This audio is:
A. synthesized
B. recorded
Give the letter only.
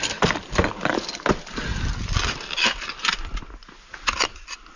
B